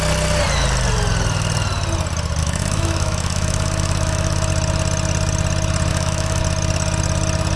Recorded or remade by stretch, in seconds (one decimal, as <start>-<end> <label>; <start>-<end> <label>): 0.0-2.4 recorded; 2.4-4.5 remade; 4.5-5.9 recorded; 5.9-6.4 remade; 6.4-7.6 recorded